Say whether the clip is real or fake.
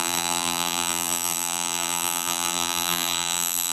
fake